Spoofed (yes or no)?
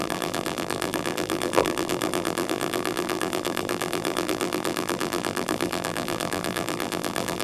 yes